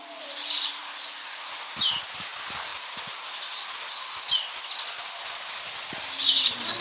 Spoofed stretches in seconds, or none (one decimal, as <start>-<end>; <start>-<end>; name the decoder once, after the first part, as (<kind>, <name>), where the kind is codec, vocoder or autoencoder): none